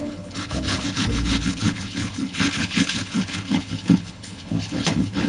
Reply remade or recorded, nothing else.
remade